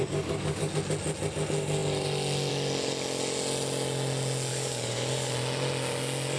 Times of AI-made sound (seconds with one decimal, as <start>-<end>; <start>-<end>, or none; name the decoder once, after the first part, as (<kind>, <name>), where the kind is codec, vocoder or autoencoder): 0.0-0.7 (codec, DAC); 4.5-5.3